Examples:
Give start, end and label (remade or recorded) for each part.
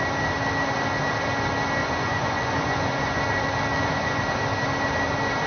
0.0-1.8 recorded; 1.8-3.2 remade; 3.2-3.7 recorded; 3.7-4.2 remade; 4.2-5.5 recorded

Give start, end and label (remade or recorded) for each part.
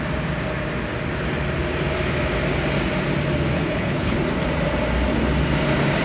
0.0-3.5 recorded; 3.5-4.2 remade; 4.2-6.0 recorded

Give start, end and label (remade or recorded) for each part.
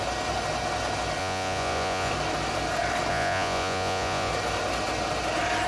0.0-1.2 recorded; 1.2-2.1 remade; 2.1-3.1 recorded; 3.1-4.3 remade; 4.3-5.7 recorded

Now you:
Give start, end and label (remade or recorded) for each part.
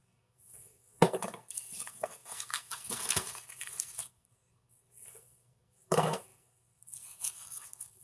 0.0-8.0 remade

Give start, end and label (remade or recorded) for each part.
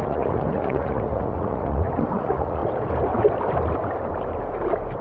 0.0-2.6 remade; 2.6-5.0 recorded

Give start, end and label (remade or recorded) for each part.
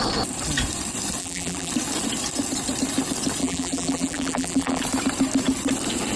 0.0-1.2 recorded; 1.2-1.7 remade; 1.7-3.4 recorded; 3.4-4.8 remade; 4.8-6.2 recorded